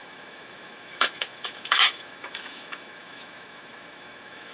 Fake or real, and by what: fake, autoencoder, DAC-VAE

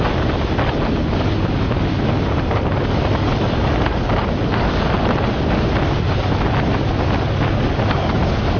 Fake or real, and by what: real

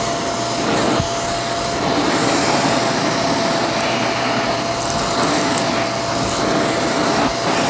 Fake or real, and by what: real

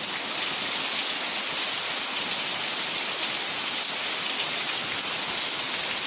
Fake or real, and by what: real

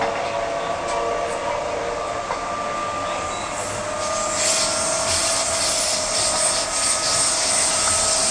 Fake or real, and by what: real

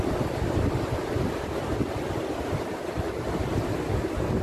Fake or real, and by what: real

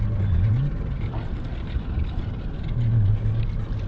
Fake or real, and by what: real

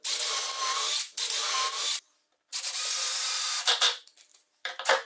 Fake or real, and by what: fake, vocoder, BigVGAN v2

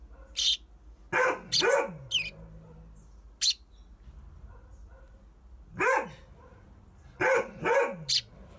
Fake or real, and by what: real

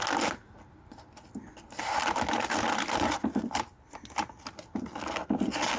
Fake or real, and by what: real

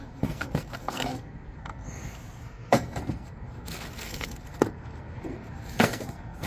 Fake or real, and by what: fake, codec, SNAC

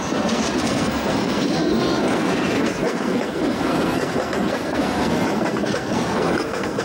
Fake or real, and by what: fake, codec, SNAC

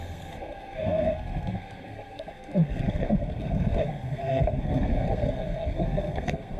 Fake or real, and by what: fake, codec, SNAC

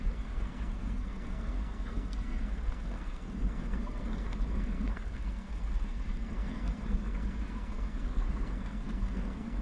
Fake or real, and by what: fake, codec, SNAC